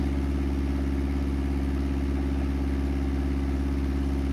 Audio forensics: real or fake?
real